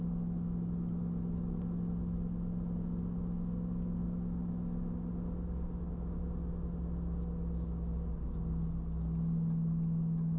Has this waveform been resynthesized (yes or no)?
no